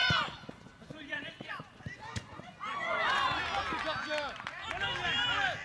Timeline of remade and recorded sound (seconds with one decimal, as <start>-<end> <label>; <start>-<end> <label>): 0.0-3.4 remade; 3.4-5.6 recorded